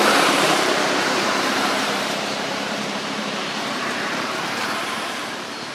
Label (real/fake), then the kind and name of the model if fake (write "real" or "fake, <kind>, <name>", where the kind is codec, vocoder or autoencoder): fake, vocoder, BigVGAN v2